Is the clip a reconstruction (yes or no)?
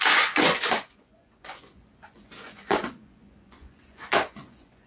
yes